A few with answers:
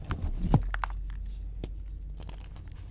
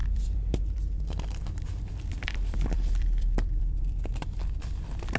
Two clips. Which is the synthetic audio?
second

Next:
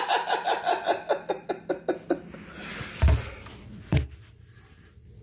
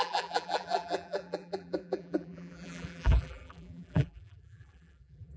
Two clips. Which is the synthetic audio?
second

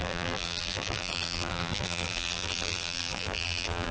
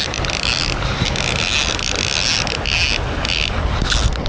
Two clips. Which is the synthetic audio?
first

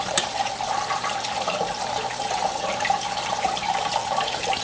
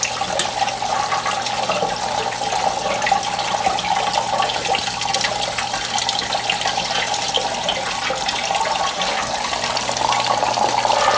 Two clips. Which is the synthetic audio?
first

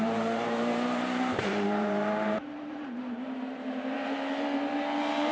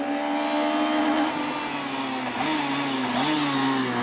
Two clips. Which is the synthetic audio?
first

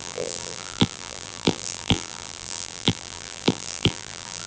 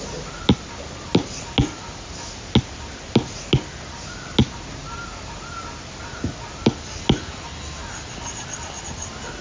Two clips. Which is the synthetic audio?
first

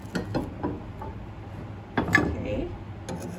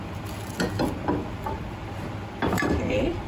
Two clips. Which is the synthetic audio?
second